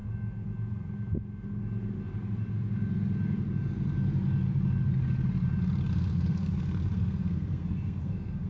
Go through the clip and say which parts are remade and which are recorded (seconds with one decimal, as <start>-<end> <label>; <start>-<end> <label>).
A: 0.0-5.9 recorded; 5.9-8.5 remade